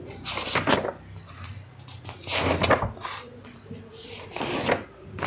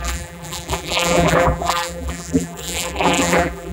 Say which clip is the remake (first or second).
second